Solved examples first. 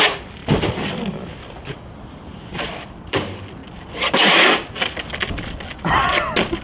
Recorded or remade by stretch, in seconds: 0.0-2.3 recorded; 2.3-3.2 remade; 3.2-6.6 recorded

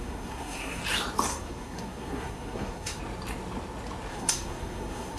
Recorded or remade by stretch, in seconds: 0.0-0.8 remade; 0.8-1.3 recorded; 1.3-3.0 remade; 3.0-4.1 recorded; 4.1-5.2 remade

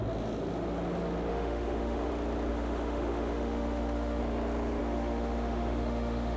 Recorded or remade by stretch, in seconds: 0.0-1.3 recorded; 1.3-2.1 remade; 2.1-2.5 recorded; 2.5-4.2 remade; 4.2-4.8 recorded; 4.8-6.4 remade

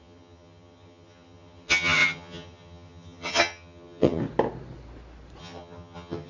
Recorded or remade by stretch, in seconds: 0.0-4.2 remade; 4.2-5.4 recorded; 5.4-6.3 remade

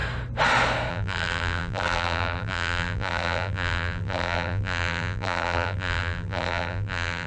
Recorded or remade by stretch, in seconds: 0.0-0.9 recorded; 0.9-7.3 remade

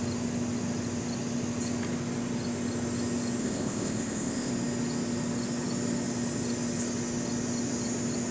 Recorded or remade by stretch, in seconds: 0.0-3.4 recorded; 3.4-4.5 remade; 4.5-8.3 recorded

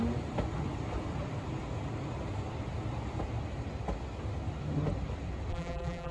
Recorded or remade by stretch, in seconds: 0.0-5.5 recorded; 5.5-6.1 remade